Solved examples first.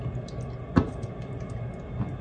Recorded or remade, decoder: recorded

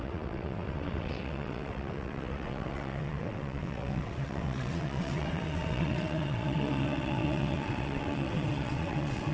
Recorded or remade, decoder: remade, vocoder, WaveNeXt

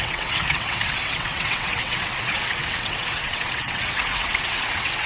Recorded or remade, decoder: remade, vocoder, WaveNeXt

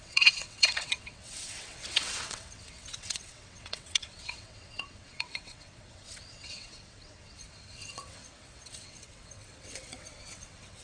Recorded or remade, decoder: remade, vocoder, WaveNeXt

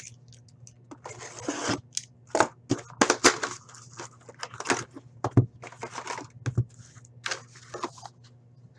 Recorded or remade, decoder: recorded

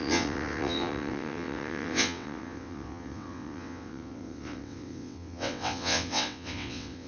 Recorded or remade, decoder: remade, vocoder, WaveNeXt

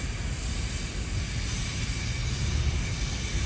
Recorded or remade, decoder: recorded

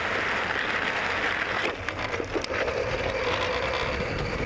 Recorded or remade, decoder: recorded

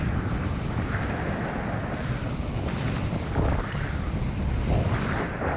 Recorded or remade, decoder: recorded